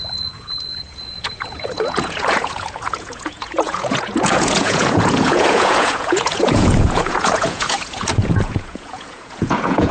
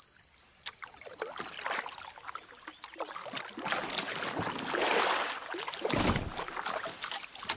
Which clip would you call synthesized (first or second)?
first